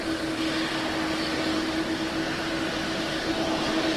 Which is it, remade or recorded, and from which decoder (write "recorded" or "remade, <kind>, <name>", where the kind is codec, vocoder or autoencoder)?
recorded